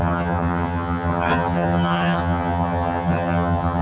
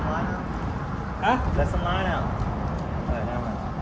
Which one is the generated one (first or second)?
first